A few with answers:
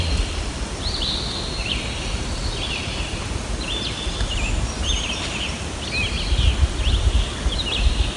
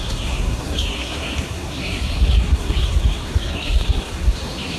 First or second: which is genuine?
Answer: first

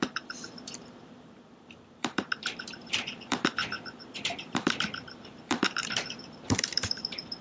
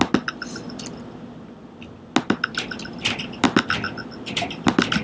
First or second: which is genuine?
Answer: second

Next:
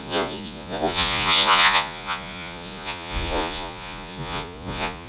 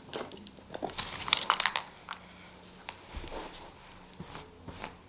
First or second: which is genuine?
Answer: second